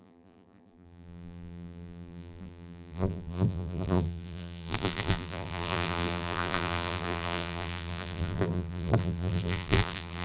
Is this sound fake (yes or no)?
yes